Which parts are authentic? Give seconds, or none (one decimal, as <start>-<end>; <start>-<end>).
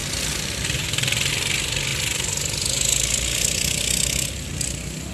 0.0-5.1